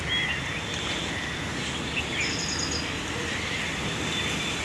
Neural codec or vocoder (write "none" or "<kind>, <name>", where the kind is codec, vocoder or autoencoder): none